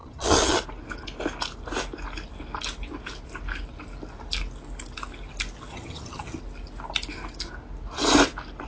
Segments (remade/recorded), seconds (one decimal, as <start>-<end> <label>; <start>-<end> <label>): 0.0-0.6 remade; 0.6-5.7 recorded; 5.7-6.4 remade; 6.4-8.7 recorded